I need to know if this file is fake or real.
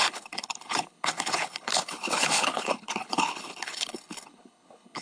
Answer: fake